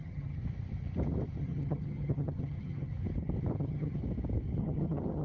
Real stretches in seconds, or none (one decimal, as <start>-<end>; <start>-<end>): 0.4-1.4; 2.9-3.6; 4.0-4.6